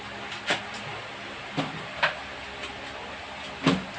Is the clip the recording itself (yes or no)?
yes